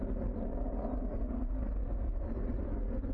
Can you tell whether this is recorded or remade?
recorded